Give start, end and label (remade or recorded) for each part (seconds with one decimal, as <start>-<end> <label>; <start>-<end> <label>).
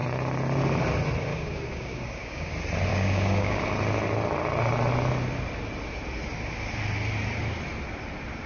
0.0-1.3 recorded; 1.3-2.5 remade; 2.5-2.9 recorded; 2.9-3.6 remade; 3.6-8.5 recorded